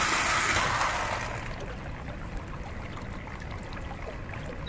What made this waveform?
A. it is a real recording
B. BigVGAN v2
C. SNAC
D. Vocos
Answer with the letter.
A